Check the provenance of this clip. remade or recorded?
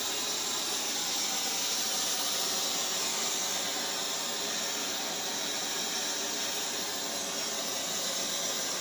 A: recorded